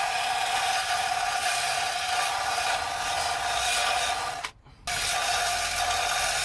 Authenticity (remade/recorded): recorded